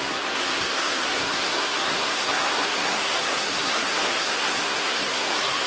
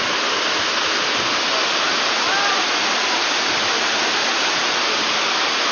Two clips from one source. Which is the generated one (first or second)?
first